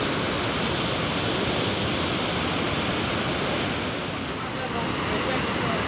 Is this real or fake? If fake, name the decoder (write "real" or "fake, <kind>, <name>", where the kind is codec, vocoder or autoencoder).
real